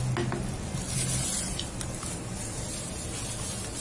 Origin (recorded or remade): recorded